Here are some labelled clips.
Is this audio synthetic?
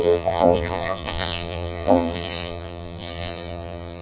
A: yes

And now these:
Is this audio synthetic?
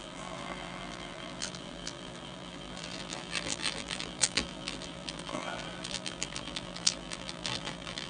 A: yes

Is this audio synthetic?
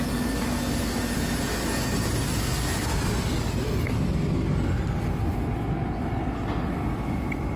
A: no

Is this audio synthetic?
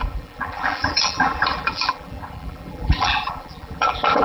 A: yes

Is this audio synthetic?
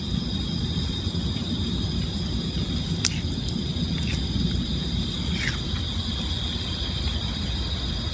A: no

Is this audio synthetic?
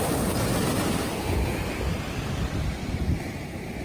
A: no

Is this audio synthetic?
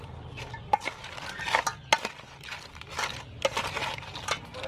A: no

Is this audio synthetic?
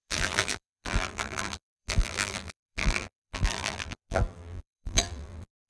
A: yes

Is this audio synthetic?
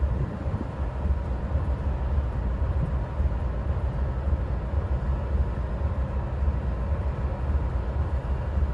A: no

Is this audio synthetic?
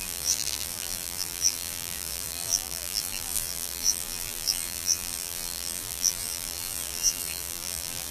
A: yes